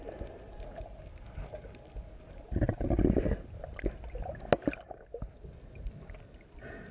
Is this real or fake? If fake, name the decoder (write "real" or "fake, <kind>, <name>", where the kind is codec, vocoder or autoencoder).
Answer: real